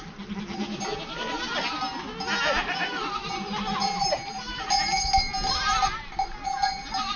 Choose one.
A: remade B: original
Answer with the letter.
B